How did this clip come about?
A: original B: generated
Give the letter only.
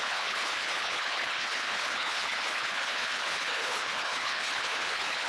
B